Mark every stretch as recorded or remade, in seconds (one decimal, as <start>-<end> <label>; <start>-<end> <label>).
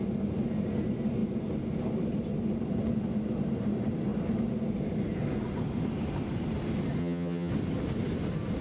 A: 0.0-7.0 recorded; 7.0-7.5 remade; 7.5-8.6 recorded